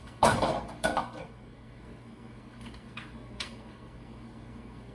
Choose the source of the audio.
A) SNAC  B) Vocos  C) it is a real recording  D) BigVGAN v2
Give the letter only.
A